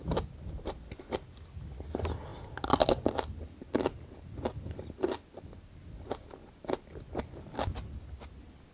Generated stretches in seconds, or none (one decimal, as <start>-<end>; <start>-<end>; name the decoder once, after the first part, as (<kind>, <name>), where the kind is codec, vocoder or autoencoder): none